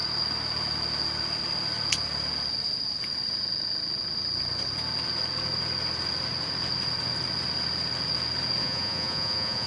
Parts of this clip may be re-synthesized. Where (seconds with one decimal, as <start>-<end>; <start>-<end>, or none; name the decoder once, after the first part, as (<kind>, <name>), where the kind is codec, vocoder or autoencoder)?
8.6-9.7 (vocoder, Vocos)